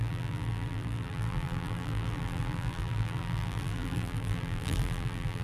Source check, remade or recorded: remade